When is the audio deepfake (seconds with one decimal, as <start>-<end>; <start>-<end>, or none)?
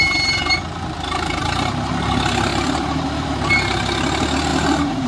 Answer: 1.4-1.9; 2.5-3.3; 4.5-5.1